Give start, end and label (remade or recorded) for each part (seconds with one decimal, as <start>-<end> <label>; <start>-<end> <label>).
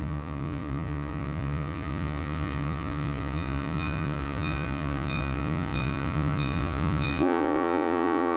0.0-8.4 remade